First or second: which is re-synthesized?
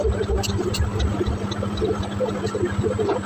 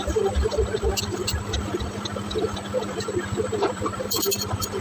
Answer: second